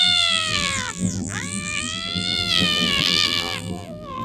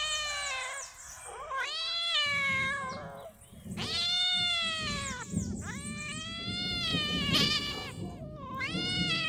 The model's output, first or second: first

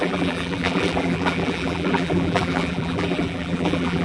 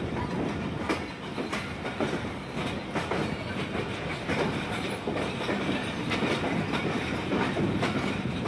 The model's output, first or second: first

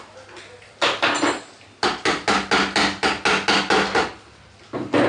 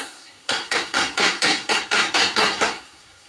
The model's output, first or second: second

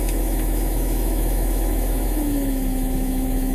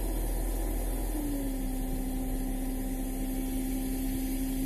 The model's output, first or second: first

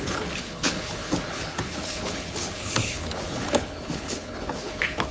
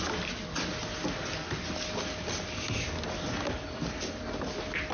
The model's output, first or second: first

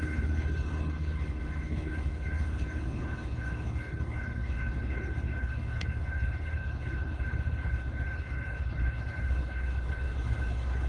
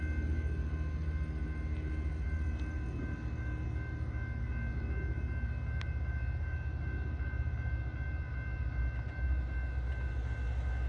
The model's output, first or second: first